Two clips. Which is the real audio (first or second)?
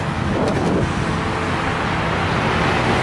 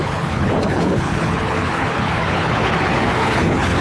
first